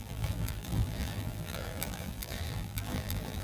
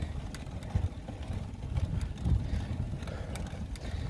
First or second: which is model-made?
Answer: first